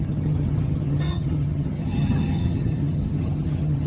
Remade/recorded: remade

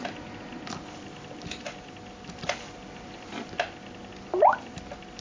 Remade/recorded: recorded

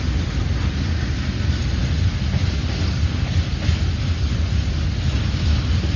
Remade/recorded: recorded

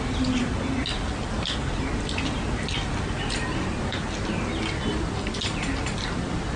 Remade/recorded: recorded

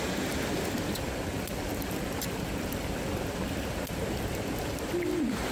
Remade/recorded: recorded